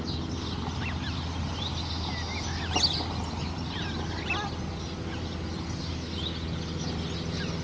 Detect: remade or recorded recorded